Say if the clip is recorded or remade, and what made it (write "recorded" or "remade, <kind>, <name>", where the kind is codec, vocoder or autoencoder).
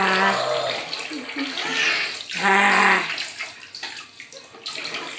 recorded